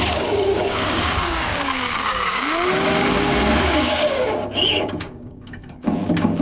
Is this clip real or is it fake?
fake